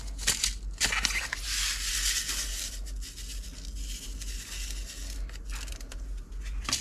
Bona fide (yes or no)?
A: yes